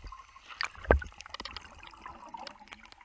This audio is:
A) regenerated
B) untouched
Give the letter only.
B